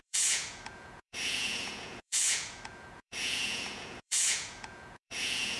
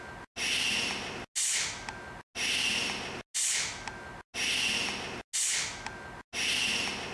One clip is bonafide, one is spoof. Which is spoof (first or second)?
first